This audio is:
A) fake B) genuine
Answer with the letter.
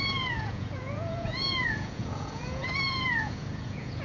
A